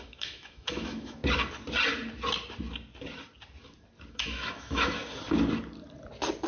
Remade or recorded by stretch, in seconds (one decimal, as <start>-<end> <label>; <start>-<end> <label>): 0.0-1.2 remade; 1.2-4.1 recorded; 4.1-5.0 remade; 5.0-6.5 recorded